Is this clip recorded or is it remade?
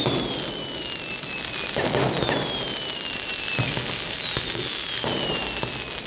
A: recorded